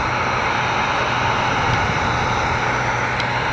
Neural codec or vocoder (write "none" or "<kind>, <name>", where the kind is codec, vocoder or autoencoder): none